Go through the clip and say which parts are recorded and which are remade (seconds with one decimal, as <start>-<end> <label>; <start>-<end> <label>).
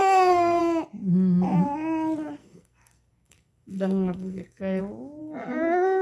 0.0-0.6 remade; 0.6-2.4 recorded; 2.4-4.8 remade; 4.8-5.2 recorded; 5.2-6.0 remade